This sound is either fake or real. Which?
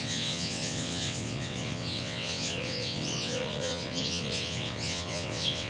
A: fake